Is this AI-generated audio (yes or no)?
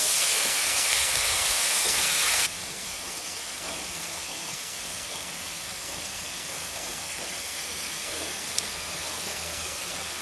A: yes